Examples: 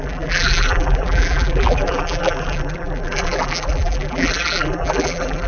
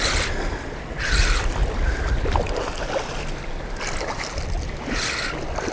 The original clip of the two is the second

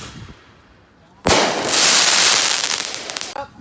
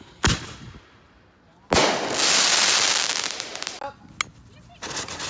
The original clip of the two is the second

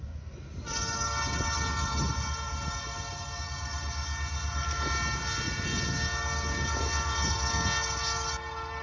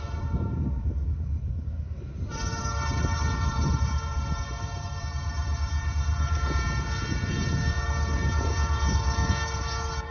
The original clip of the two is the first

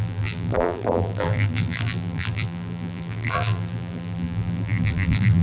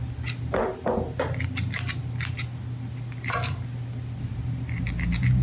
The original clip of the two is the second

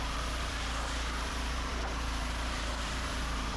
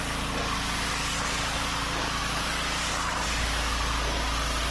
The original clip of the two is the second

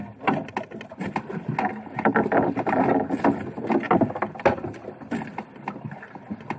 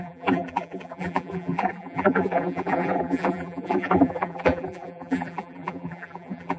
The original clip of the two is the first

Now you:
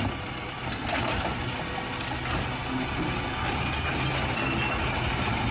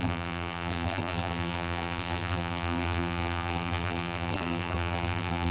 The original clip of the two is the first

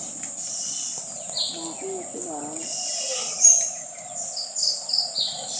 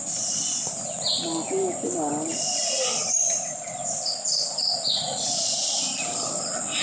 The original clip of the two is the first